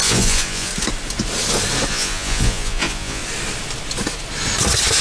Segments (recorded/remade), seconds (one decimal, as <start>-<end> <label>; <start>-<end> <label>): 0.0-0.7 remade; 0.7-1.9 recorded; 1.9-3.2 remade; 3.2-5.0 recorded